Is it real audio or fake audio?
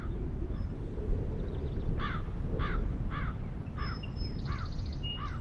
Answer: real